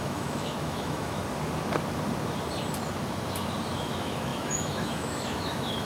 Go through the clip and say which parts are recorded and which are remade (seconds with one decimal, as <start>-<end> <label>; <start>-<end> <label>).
0.0-1.2 remade; 1.2-3.8 recorded; 3.8-5.9 remade